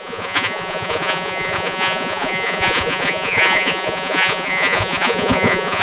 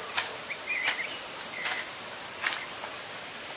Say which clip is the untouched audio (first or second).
second